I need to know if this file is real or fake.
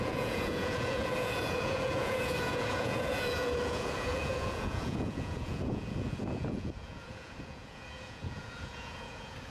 fake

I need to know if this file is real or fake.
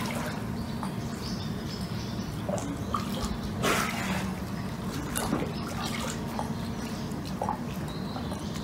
real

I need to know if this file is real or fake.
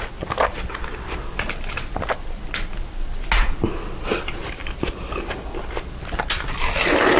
real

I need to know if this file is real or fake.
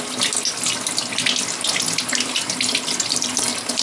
real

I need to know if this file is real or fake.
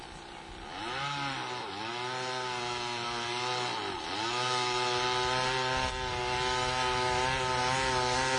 real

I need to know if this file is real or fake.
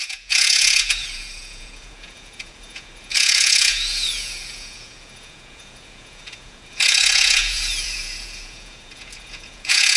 fake